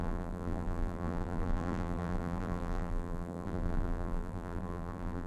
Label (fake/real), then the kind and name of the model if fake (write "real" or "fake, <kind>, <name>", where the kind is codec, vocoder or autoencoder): fake, vocoder, BigVGAN v2